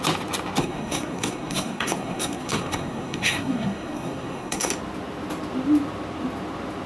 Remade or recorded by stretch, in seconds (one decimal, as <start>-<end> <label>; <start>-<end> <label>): 0.0-0.6 recorded; 0.6-4.7 remade; 4.7-6.9 recorded